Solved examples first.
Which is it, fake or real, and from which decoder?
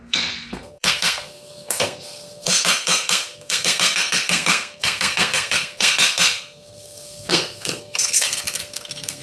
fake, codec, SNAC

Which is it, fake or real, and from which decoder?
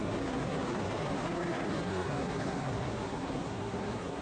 fake, codec, SNAC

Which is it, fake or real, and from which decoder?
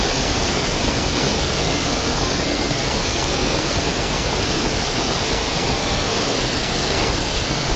fake, codec, SNAC